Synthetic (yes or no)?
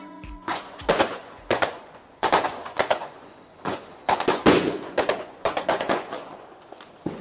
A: yes